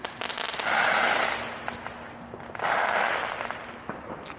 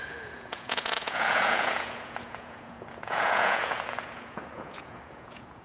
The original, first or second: first